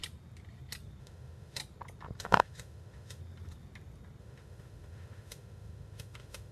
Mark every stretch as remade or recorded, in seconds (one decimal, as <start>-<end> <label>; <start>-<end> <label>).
0.0-1.0 recorded; 1.0-1.6 remade; 1.6-2.2 recorded; 2.2-3.2 remade; 3.2-4.2 recorded; 4.2-6.5 remade